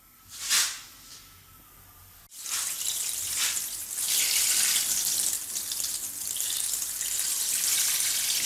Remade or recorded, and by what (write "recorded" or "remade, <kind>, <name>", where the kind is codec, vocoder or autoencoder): recorded